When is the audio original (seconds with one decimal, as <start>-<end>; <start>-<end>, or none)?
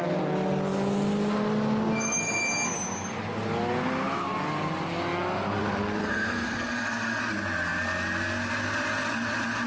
0.0-6.0; 7.2-9.7